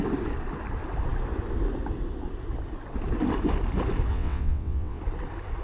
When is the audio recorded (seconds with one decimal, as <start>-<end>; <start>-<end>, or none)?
0.0-4.1; 5.0-5.6